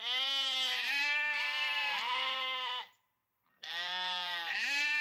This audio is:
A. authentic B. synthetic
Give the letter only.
B